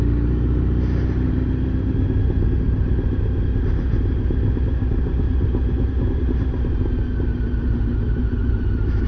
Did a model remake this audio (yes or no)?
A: no